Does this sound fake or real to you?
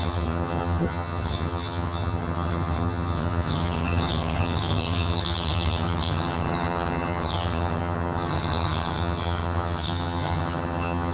fake